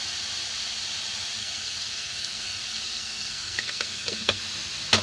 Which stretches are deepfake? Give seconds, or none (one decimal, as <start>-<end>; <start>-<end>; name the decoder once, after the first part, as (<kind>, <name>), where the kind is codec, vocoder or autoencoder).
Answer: 1.4-4.4 (codec, SNAC)

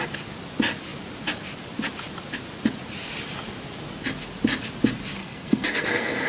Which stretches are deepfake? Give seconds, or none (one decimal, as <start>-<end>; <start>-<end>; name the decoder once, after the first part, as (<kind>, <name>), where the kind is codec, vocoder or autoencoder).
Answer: 5.2-6.3 (codec, SNAC)

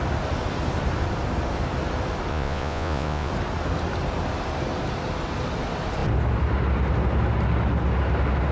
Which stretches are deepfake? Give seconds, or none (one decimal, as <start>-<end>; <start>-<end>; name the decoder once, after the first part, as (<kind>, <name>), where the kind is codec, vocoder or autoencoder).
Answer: 2.3-3.3 (vocoder, Vocos)

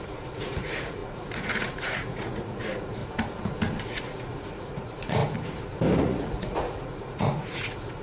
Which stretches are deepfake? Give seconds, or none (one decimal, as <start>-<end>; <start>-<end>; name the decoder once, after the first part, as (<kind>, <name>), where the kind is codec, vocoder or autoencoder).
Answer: 0.0-3.0 (vocoder, Vocos); 3.8-5.2; 6.0-8.0

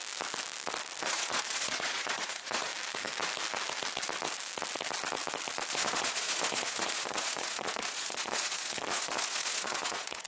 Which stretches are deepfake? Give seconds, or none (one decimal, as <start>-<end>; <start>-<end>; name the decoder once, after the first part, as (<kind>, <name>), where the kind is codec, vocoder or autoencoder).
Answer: 1.0-2.7 (vocoder, Vocos); 5.7-10.3